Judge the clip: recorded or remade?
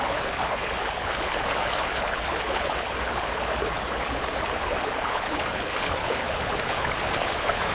remade